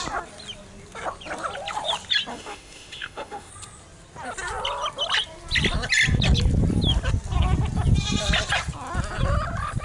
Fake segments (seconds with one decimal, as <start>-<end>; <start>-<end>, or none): 2.3-3.5